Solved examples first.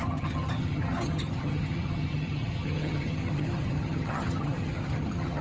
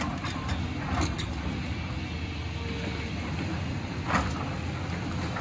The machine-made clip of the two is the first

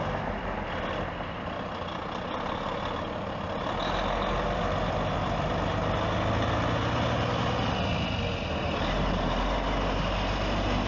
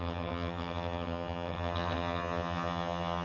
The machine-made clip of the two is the second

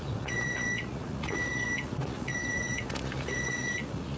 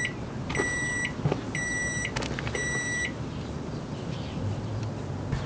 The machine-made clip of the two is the first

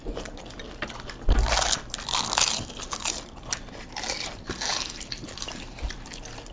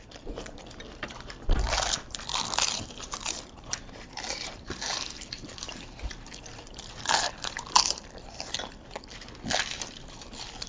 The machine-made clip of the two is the second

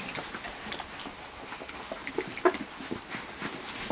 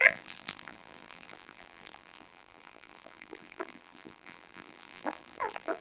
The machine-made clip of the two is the second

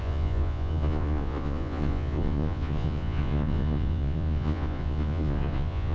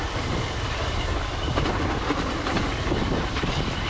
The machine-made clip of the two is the first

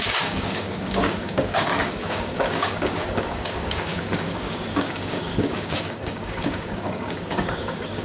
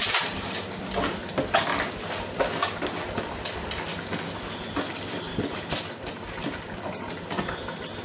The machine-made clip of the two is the first